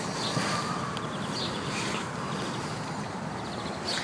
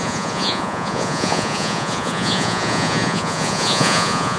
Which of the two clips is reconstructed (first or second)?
second